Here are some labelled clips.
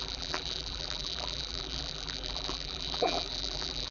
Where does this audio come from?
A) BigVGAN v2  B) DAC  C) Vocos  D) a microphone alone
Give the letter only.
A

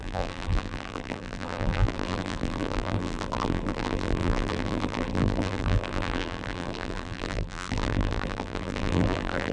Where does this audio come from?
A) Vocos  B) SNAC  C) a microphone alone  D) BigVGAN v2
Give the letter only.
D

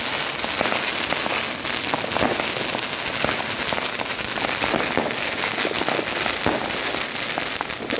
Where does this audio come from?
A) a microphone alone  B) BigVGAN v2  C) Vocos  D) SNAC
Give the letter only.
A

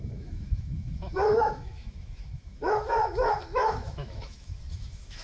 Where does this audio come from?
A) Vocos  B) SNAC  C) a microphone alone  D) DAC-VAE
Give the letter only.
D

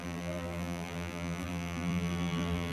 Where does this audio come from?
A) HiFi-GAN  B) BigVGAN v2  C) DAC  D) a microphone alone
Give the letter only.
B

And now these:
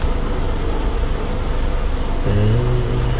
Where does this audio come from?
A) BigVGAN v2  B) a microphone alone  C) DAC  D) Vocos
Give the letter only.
B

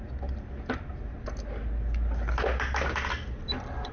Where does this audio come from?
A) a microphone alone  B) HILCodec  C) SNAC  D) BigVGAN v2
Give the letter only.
A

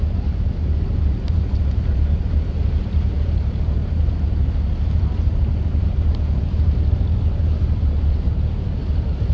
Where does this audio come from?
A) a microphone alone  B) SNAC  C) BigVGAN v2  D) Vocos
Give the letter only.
C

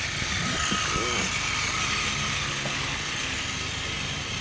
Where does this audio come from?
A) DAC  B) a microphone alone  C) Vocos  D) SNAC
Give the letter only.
B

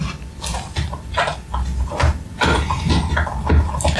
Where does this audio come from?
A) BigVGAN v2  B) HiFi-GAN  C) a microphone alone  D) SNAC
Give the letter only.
C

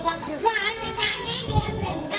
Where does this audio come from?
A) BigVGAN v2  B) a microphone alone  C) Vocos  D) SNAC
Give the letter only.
D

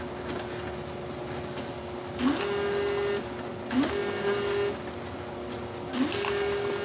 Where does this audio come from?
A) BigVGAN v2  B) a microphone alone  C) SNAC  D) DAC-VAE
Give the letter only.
B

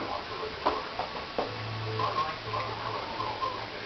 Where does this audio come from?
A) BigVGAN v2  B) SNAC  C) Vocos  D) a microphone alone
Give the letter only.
D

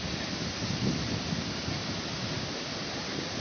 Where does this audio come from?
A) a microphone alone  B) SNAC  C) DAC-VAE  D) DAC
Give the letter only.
A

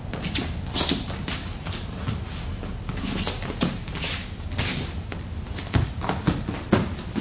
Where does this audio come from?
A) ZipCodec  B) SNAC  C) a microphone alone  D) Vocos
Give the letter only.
C